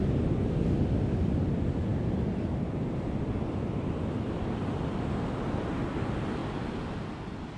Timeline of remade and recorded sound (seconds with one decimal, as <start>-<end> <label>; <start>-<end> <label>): 0.0-7.6 recorded